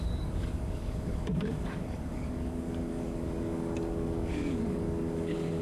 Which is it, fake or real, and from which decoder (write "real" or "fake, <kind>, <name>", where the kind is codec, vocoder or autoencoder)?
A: fake, codec, DAC